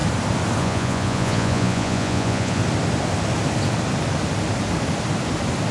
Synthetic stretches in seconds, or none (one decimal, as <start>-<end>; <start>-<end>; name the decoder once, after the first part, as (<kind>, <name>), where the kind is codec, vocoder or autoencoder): 0.6-2.6 (vocoder, Vocos)